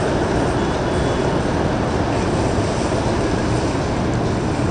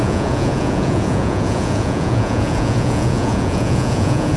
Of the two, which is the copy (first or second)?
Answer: second